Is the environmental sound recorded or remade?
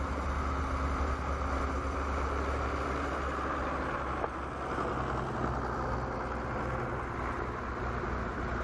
recorded